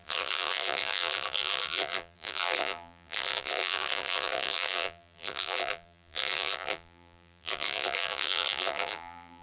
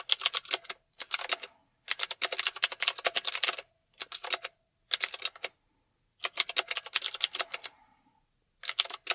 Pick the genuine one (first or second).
second